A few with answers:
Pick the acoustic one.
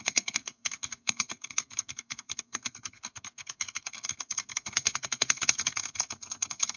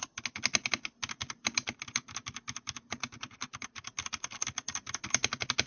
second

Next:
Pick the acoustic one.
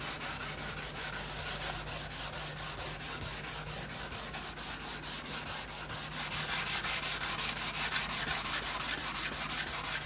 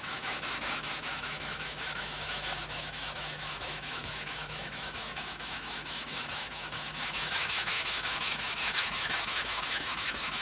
first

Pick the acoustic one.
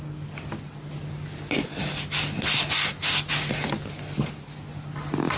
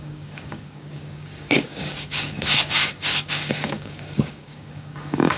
first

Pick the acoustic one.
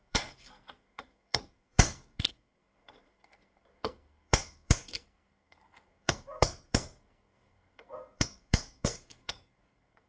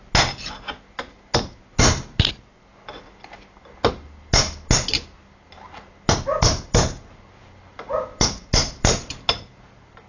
second